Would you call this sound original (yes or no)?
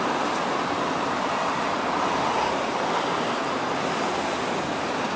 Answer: yes